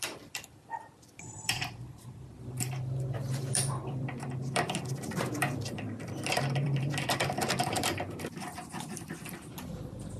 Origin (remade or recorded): remade